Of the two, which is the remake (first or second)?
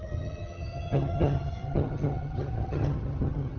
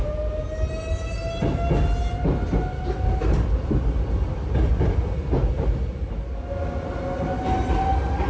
first